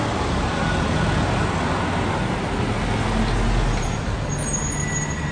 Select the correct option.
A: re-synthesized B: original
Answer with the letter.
B